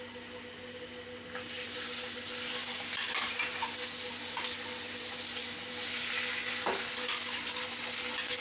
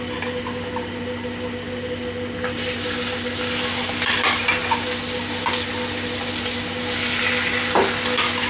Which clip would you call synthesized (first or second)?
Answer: second